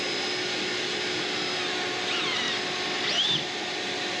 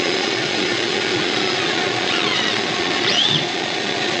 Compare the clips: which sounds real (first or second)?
first